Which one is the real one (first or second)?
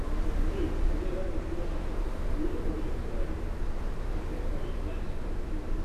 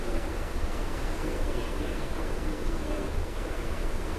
first